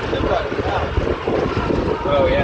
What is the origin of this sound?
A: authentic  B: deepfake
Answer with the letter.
A